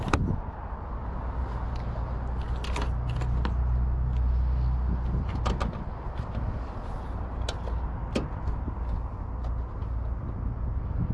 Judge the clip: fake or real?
real